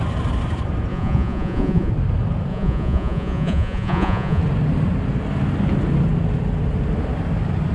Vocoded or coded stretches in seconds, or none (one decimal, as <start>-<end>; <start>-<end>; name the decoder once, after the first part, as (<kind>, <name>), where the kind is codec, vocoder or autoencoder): 0.9-1.9 (vocoder, Vocos); 2.5-4.4